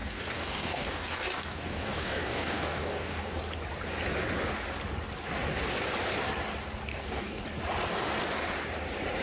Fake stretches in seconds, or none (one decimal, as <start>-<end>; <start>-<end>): 0.0-3.4; 6.9-7.4